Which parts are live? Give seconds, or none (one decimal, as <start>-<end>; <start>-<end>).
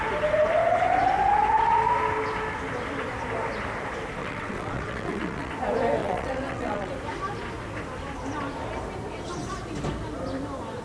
0.0-4.2; 5.5-6.0; 6.9-10.8